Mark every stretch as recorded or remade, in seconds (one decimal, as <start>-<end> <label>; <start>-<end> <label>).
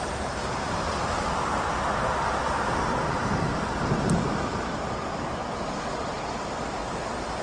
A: 0.0-0.4 remade; 0.4-1.5 recorded; 1.5-1.9 remade; 1.9-2.8 recorded; 2.8-5.4 remade; 5.4-6.8 recorded; 6.8-7.4 remade